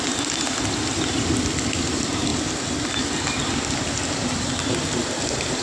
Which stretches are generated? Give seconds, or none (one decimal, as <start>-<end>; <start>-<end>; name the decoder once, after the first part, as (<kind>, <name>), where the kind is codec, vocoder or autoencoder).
none